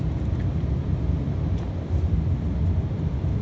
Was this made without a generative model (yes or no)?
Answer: yes